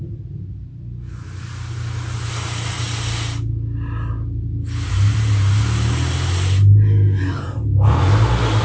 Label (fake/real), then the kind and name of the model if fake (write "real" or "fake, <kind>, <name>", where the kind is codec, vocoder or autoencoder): real